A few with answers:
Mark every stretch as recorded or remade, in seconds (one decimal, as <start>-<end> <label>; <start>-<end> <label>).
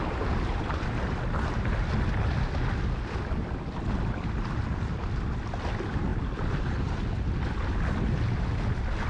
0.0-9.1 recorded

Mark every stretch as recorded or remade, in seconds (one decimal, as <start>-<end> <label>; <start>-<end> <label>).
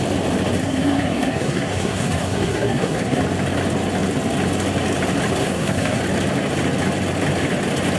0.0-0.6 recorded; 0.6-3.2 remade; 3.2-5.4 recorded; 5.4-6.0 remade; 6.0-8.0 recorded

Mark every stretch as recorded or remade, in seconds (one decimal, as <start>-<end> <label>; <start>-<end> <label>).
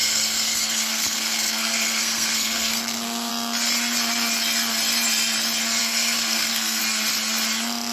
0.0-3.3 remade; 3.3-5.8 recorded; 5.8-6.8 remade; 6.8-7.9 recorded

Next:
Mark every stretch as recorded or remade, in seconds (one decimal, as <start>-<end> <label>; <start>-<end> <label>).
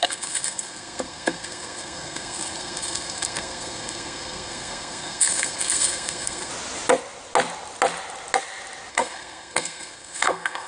0.0-6.5 remade; 6.5-8.9 recorded; 8.9-10.7 remade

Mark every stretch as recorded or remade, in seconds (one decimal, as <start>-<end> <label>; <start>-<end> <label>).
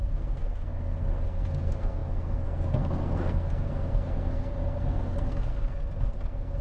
0.0-6.6 remade